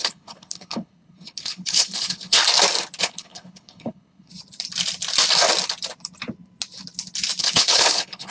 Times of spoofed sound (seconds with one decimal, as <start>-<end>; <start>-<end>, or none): 0.0-2.4; 3.0-4.3; 7.4-8.3